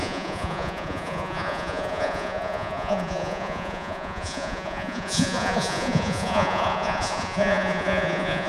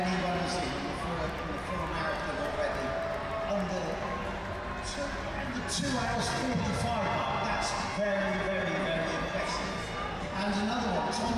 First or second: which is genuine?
second